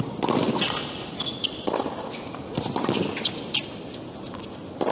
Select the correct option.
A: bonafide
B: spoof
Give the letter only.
A